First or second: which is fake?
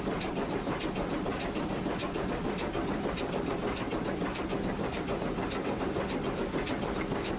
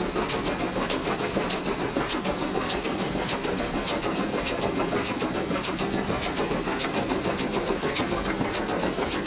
second